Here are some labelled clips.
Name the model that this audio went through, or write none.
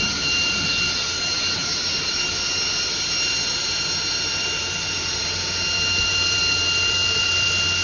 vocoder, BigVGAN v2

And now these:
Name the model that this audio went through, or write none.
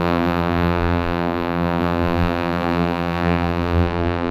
vocoder, BigVGAN v2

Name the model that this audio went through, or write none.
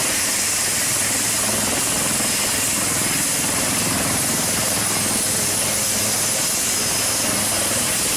vocoder, BigVGAN v2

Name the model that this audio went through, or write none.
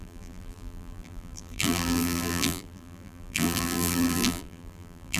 vocoder, BigVGAN v2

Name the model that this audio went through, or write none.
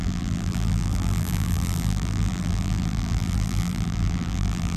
vocoder, BigVGAN v2